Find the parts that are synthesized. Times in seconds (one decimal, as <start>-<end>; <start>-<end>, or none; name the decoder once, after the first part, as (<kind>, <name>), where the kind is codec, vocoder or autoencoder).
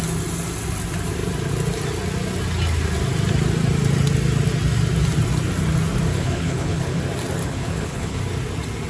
6.1-7.0 (codec, HILCodec); 7.4-8.2